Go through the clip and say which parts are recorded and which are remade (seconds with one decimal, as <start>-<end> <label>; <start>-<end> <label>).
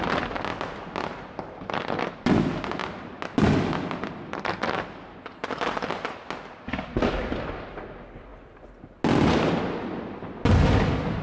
0.0-11.2 recorded